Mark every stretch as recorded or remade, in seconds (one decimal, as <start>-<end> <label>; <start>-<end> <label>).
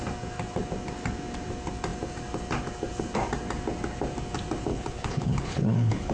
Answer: 0.0-4.7 recorded; 4.7-6.1 remade